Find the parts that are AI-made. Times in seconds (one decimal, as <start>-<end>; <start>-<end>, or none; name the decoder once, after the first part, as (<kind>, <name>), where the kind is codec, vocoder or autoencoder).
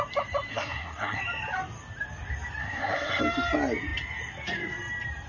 0.5-1.2 (codec, SNAC); 2.6-3.2